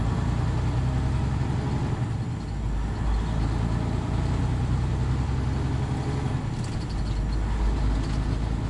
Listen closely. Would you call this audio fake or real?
real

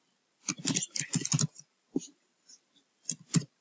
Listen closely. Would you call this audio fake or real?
real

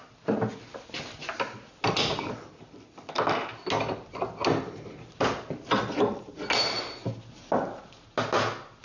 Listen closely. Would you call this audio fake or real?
real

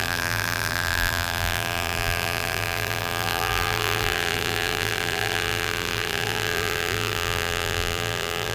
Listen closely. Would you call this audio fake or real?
fake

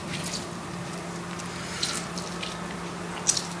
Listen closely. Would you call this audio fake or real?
real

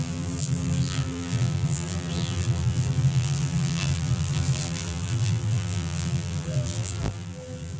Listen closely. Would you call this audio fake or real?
fake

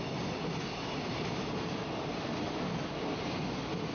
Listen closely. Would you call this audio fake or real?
real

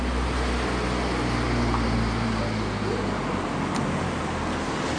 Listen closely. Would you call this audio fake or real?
real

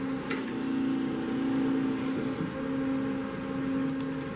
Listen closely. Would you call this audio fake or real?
real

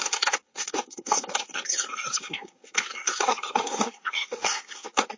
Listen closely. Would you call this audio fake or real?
fake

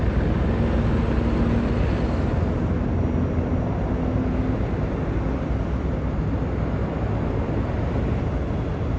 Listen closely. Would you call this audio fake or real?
real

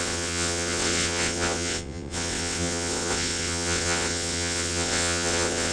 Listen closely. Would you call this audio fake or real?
fake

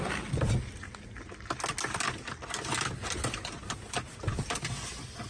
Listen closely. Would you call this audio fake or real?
real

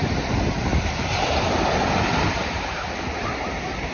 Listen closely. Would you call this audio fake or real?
real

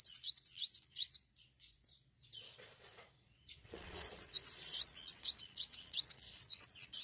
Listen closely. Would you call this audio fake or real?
fake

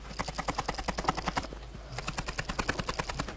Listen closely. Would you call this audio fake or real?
real